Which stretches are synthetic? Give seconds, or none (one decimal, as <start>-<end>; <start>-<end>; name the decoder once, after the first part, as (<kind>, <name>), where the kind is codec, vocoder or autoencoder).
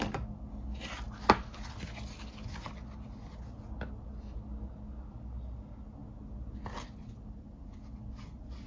none